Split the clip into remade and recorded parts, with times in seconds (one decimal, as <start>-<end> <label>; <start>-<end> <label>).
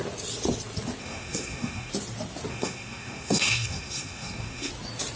0.0-1.0 recorded; 1.0-1.9 remade; 1.9-2.5 recorded; 2.5-4.7 remade; 4.7-5.2 recorded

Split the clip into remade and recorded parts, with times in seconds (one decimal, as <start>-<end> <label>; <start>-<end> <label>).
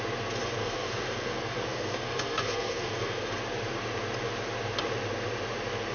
0.0-0.6 recorded; 0.6-3.4 remade; 3.4-5.9 recorded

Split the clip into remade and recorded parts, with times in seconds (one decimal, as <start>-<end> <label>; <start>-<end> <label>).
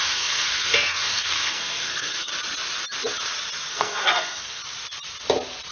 0.0-2.3 remade; 2.3-3.7 recorded; 3.7-4.6 remade; 4.6-5.7 recorded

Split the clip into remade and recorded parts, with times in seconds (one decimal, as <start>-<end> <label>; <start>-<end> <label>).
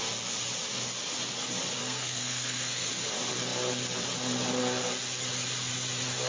0.0-1.8 recorded; 1.8-2.9 remade; 2.9-6.3 recorded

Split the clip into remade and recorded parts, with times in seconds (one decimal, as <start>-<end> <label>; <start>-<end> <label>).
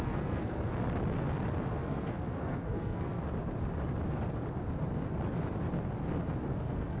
0.0-0.7 remade; 0.7-1.7 recorded; 1.7-3.2 remade; 3.2-6.4 recorded; 6.4-7.0 remade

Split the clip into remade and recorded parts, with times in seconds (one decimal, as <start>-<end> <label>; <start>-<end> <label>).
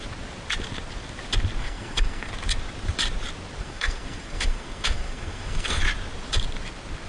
0.0-1.6 recorded; 1.6-2.3 remade; 2.3-3.6 recorded; 3.6-5.8 remade; 5.8-7.1 recorded